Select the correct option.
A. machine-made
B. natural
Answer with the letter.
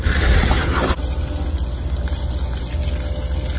B